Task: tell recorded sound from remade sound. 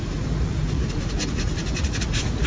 remade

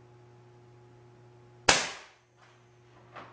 recorded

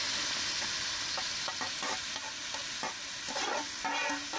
recorded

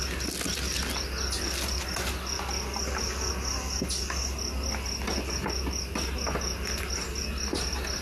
recorded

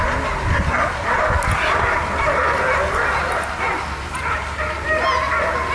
recorded